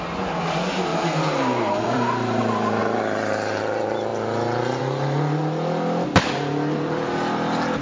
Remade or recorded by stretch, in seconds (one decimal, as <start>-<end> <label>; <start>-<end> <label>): 0.0-0.9 recorded; 0.9-2.4 remade; 2.4-2.8 recorded; 2.8-3.6 remade; 3.6-7.8 recorded